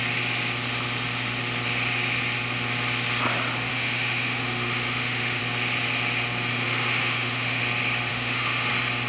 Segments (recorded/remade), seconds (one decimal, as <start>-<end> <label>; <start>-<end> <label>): 0.0-3.7 recorded; 3.7-5.4 remade; 5.4-6.5 recorded; 6.5-7.6 remade; 7.6-8.1 recorded; 8.1-8.7 remade; 8.7-9.1 recorded